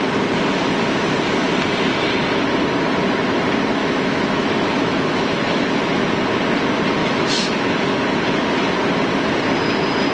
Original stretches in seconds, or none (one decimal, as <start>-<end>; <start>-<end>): 0.0-3.8; 6.0-7.0; 7.9-10.1